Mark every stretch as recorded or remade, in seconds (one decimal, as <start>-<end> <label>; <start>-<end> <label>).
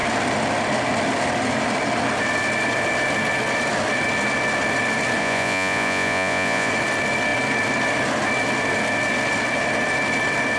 0.0-5.2 recorded; 5.2-6.7 remade; 6.7-10.6 recorded